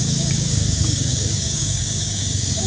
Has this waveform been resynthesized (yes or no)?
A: yes